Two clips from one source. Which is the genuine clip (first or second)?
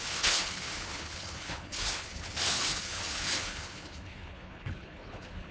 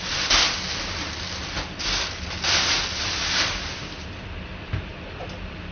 second